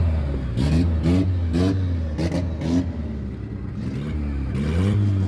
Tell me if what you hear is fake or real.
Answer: real